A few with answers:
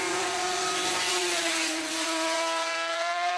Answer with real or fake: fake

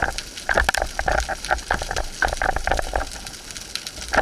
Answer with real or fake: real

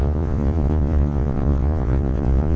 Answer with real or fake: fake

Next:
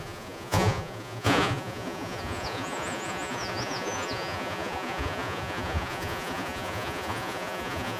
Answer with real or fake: fake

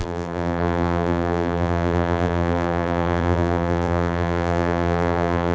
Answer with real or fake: fake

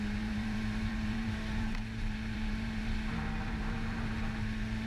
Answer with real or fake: fake